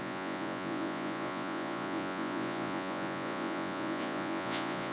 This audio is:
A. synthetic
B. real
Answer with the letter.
A